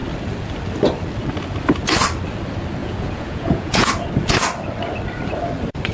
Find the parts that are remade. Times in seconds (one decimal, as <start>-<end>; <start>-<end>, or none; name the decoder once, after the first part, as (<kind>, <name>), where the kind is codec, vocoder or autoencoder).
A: 2.8-3.9 (vocoder, Vocos)